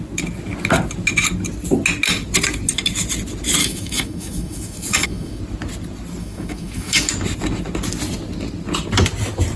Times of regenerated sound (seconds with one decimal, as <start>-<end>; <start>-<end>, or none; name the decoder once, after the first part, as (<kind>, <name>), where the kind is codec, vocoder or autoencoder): 3.6-5.4 (autoencoder, DAC-VAE); 6.2-7.1